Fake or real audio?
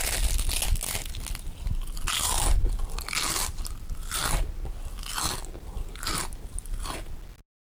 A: real